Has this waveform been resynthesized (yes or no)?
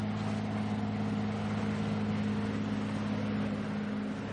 no